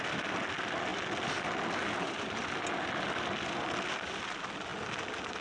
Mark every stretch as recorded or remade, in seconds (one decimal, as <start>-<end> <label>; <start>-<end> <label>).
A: 0.0-5.4 recorded